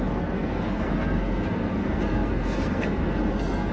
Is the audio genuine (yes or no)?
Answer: no